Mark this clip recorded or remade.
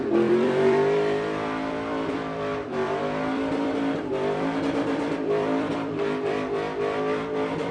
remade